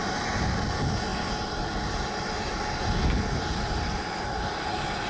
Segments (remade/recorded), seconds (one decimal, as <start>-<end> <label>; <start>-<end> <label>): 0.0-5.1 recorded